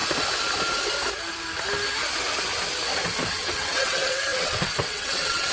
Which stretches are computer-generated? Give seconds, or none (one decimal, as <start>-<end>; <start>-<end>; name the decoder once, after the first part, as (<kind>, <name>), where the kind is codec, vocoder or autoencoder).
3.3-5.5 (vocoder, WaveNeXt)